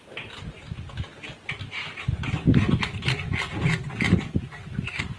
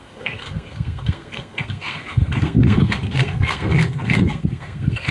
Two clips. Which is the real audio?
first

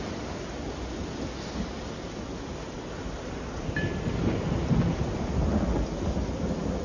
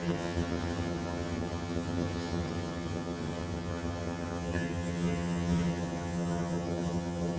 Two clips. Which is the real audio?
first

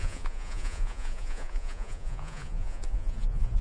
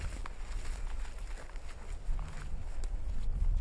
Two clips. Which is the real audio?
second